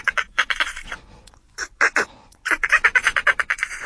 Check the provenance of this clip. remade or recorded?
remade